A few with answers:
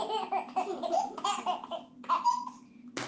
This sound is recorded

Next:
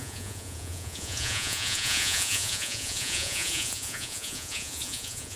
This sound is remade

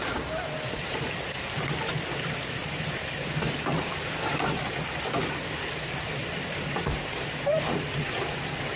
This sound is remade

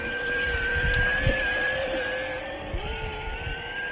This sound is remade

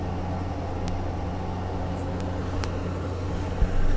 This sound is recorded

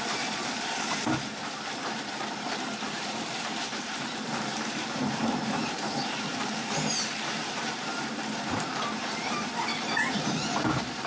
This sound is remade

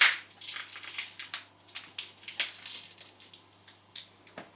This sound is recorded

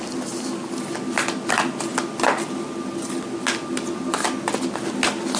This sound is recorded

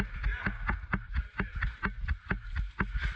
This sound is recorded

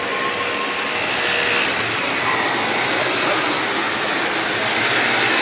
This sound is recorded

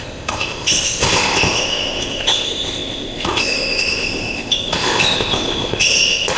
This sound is remade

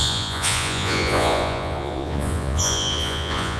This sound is remade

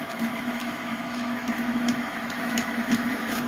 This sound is remade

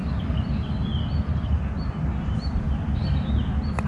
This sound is recorded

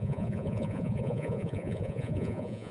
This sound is remade